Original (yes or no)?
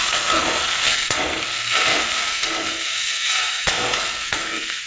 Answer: no